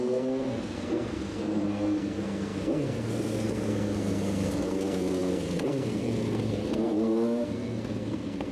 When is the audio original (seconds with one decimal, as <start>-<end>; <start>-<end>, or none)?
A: none

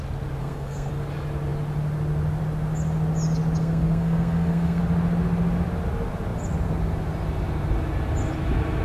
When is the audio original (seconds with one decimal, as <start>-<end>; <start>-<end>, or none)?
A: 0.0-0.4; 0.9-3.6; 4.8-8.8

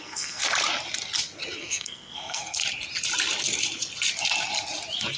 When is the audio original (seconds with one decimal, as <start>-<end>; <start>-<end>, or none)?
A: 0.4-1.6; 2.6-5.2

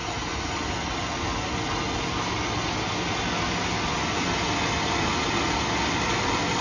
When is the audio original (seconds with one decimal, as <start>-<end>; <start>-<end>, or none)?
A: 0.0-6.6